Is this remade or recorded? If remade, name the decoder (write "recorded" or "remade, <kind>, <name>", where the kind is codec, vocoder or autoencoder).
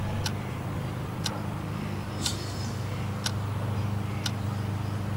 recorded